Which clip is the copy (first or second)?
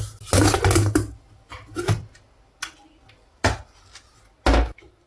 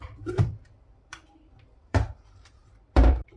second